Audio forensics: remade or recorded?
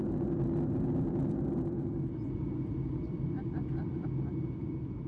recorded